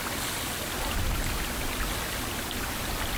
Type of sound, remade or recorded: recorded